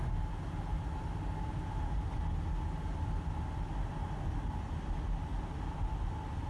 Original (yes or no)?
yes